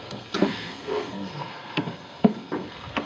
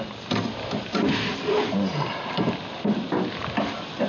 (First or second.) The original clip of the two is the second